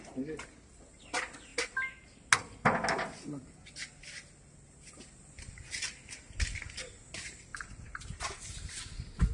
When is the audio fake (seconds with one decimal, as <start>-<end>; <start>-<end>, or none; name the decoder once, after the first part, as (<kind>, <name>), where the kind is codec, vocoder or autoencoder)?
7.5-8.8 (vocoder, BigVGAN v2)